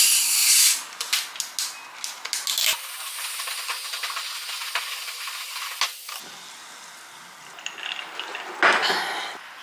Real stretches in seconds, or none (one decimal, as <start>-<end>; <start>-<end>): 0.0-9.6